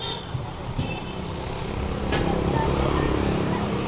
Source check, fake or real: fake